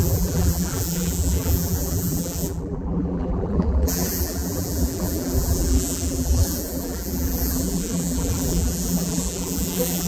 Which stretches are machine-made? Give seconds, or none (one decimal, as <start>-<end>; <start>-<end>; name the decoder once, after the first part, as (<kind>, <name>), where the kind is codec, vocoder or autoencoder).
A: 0.0-10.1 (vocoder, BigVGAN v2)